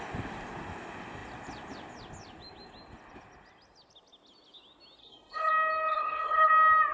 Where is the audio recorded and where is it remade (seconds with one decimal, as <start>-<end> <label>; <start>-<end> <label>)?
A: 0.0-5.0 recorded; 5.0-5.5 remade; 5.5-5.9 recorded; 5.9-6.5 remade; 6.5-6.9 recorded